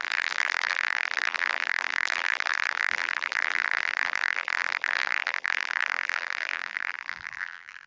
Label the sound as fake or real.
fake